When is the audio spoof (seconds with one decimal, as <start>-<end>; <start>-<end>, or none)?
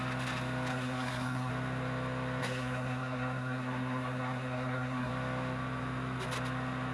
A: 0.7-1.5; 2.4-5.1